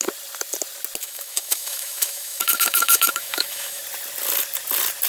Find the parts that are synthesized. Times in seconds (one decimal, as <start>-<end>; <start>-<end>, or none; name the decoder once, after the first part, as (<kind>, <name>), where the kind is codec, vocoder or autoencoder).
1.0-3.8 (autoencoder, DAC-VAE)

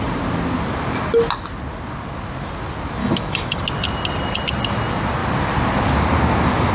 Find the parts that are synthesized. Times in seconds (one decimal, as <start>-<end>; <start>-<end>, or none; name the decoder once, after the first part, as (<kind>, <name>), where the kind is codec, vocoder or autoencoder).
3.0-3.6 (autoencoder, DAC-VAE)

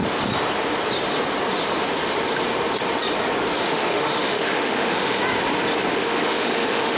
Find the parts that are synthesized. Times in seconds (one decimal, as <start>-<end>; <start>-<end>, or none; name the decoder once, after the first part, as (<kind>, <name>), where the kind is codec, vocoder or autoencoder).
3.6-5.2 (autoencoder, DAC-VAE); 5.9-7.0

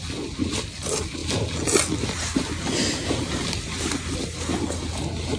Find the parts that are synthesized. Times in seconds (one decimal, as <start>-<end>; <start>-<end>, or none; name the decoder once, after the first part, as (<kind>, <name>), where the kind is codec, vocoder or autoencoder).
none

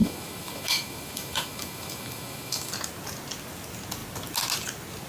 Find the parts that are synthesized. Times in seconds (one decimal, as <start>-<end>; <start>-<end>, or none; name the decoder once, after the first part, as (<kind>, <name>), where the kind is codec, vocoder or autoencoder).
0.0-2.7 (autoencoder, DAC-VAE)